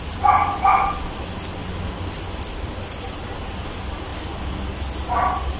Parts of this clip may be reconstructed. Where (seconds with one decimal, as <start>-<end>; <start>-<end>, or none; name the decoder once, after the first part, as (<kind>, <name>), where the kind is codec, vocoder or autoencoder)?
none